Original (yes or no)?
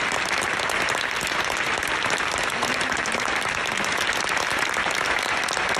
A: yes